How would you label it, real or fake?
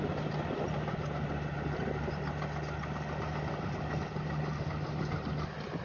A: real